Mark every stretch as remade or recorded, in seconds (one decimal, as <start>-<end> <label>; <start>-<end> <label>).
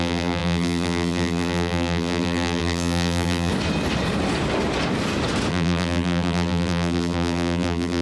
0.0-3.5 remade; 3.5-5.5 recorded; 5.5-8.0 remade